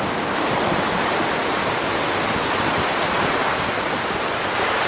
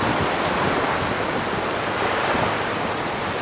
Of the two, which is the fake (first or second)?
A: first